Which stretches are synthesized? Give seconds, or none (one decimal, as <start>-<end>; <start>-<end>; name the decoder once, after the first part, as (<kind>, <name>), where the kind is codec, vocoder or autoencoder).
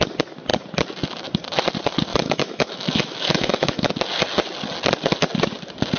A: 2.1-3.9 (autoencoder, DAC-VAE)